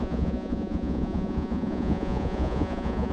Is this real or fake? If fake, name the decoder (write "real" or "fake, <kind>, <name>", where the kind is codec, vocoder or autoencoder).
fake, vocoder, Vocos